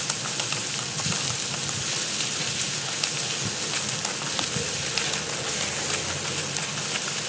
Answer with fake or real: real